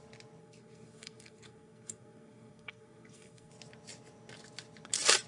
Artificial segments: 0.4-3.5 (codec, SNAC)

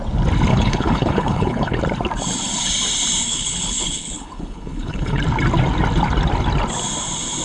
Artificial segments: 0.5-1.8 (codec, HILCodec); 3.3-5.2

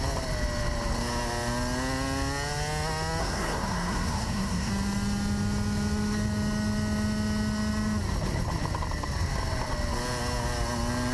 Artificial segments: 3.2-4.7 (codec, SNAC)

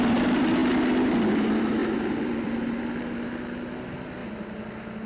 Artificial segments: 0.0-0.6 (vocoder, BigVGAN v2); 1.3-4.2

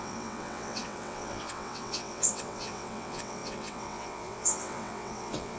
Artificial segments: 0.0-5.6 (vocoder, WaveNeXt)

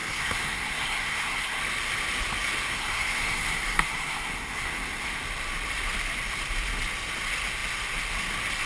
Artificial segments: 0.0-1.6 (codec, SNAC); 2.8-5.2